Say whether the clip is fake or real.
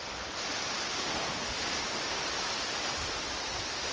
real